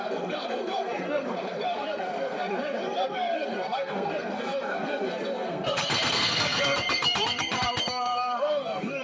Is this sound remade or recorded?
remade